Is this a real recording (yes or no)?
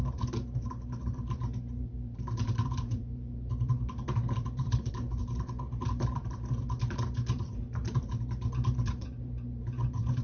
no